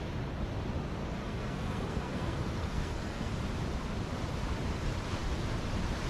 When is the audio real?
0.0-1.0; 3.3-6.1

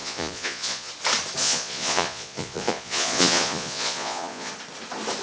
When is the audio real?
0.9-1.4; 4.5-5.2

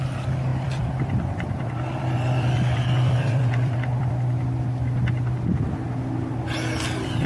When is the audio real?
0.0-0.5; 4.1-7.3

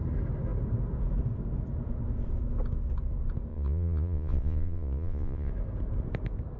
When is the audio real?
0.0-3.5; 5.5-6.6

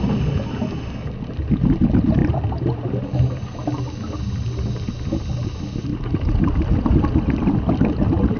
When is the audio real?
0.0-8.4

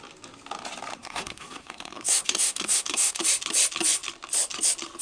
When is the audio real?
0.0-0.9; 3.2-5.0

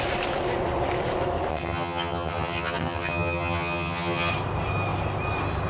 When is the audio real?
0.0-1.5; 4.3-5.7